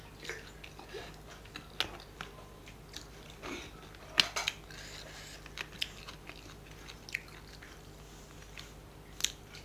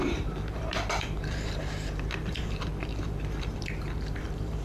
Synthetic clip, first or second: second